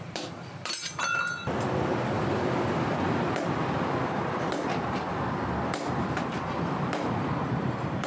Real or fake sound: fake